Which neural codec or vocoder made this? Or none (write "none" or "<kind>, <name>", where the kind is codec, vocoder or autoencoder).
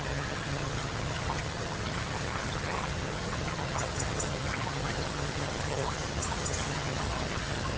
vocoder, HiFi-GAN